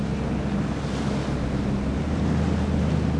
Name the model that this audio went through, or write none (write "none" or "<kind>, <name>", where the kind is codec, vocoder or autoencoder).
none